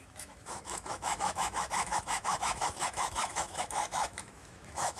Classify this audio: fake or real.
fake